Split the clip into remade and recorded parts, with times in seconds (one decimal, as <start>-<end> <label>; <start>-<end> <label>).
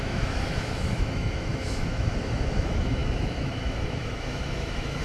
0.0-5.0 remade